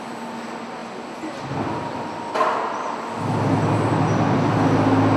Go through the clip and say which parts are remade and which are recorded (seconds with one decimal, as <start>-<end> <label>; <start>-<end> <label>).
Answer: 0.0-5.2 recorded